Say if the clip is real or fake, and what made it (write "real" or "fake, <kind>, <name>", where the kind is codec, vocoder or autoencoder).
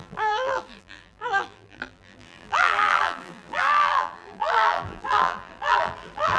fake, vocoder, BigVGAN v2